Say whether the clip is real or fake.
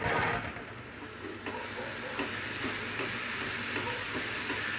real